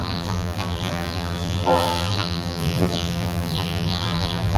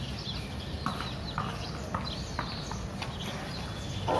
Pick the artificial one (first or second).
first